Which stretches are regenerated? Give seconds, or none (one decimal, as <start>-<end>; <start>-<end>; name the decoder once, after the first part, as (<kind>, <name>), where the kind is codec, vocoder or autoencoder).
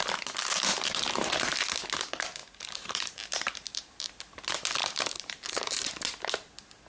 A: 0.7-1.4 (vocoder, BigVGAN v2); 2.4-4.2; 4.8-5.9